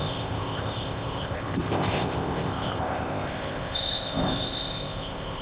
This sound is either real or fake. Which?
fake